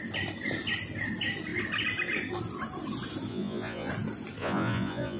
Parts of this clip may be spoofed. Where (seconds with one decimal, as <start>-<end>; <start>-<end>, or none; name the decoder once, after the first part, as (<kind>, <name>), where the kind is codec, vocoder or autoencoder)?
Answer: 3.3-3.9 (vocoder, Vocos); 4.4-5.2